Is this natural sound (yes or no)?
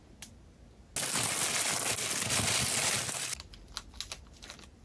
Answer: yes